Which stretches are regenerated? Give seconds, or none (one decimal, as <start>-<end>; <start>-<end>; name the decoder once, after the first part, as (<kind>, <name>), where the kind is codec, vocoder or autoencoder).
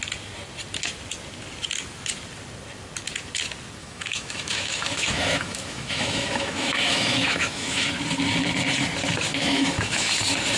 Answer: 3.8-7.9 (autoencoder, DAC-VAE); 9.3-10.2